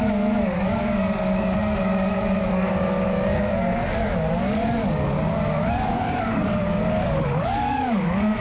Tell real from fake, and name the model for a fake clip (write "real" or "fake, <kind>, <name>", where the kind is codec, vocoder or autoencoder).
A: fake, codec, DAC